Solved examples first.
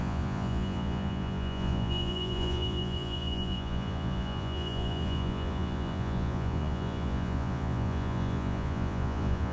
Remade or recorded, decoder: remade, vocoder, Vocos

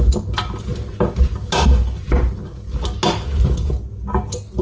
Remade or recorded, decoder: recorded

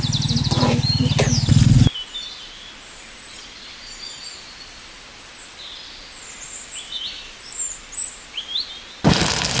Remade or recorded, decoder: recorded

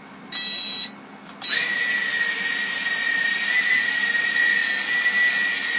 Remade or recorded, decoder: recorded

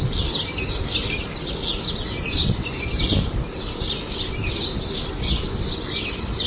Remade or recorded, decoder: recorded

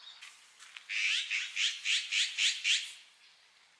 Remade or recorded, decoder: recorded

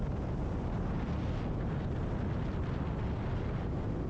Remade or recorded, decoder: recorded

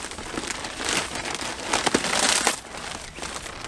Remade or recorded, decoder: recorded